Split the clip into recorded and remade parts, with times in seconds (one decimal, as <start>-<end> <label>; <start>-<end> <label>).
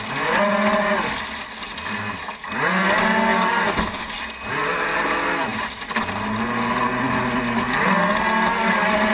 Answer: 0.0-9.1 recorded